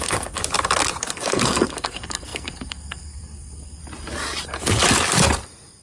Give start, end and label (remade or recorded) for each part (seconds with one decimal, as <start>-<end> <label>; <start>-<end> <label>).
0.0-0.4 remade; 0.4-1.0 recorded; 1.0-3.8 remade; 3.8-5.8 recorded